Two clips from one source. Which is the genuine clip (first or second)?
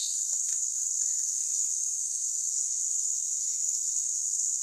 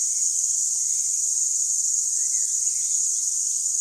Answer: second